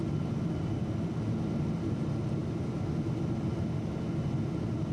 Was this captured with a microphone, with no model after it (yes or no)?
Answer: yes